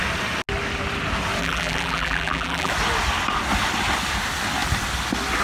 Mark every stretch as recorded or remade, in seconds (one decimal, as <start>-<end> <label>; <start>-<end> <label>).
0.0-1.4 recorded; 1.4-2.7 remade; 2.7-5.4 recorded